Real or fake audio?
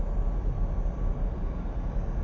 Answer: real